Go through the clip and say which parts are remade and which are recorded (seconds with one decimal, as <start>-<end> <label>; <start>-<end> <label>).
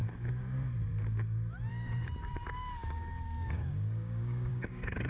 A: 0.0-1.7 recorded; 1.7-5.1 remade